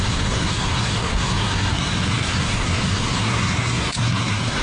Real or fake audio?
fake